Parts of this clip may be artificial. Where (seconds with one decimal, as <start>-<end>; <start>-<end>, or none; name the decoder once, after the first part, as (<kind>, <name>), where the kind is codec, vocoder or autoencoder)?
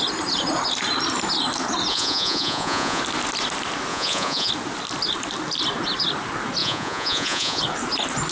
1.9-3.0 (vocoder, Vocos); 3.9-4.5; 6.6-7.6